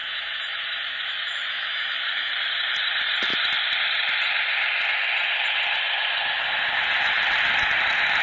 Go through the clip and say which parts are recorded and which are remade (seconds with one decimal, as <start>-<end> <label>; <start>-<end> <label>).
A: 0.0-2.3 remade; 2.3-8.2 recorded